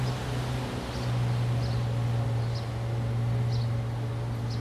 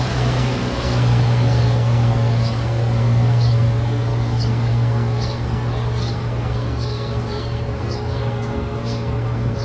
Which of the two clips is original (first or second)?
first